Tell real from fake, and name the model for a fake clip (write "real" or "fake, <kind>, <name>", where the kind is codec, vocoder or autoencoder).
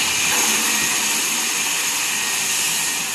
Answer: fake, vocoder, BigVGAN v2